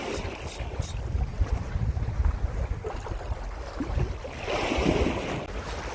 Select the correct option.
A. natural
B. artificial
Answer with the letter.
A